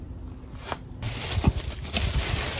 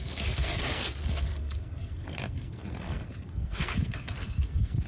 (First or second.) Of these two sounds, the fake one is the second